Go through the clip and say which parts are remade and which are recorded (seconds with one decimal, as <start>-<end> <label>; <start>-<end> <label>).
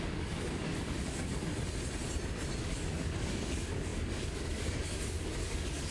0.0-1.5 remade; 1.5-2.6 recorded; 2.6-5.9 remade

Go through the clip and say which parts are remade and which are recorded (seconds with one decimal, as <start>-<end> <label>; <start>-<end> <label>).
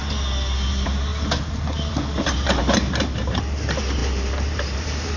0.0-0.7 recorded; 0.7-1.1 remade; 1.1-1.9 recorded; 1.9-5.2 remade